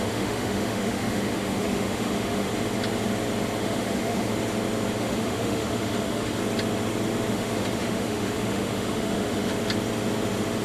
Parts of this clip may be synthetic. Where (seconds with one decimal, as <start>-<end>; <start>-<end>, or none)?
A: 0.0-2.5; 3.6-4.3; 5.0-6.4; 7.3-9.5